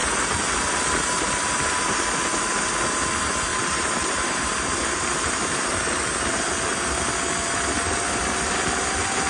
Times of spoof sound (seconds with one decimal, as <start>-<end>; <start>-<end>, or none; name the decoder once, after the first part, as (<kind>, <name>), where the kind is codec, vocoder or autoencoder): 3.5-4.7 (vocoder, BigVGAN v2)